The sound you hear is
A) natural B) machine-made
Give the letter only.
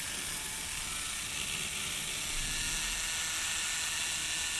A